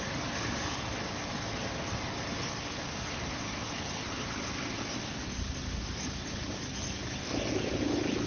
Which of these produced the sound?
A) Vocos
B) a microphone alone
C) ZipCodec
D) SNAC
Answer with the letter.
B